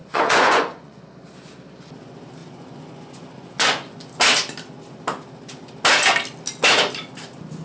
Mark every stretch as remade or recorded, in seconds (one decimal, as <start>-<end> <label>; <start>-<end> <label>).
0.0-1.0 remade; 1.0-2.4 recorded; 2.4-4.0 remade; 4.0-7.6 recorded